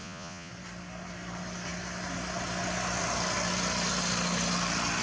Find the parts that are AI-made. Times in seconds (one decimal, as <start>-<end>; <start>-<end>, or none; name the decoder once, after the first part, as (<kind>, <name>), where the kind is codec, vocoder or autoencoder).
0.0-0.5 (vocoder, Vocos)